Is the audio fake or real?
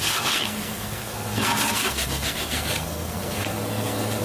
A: fake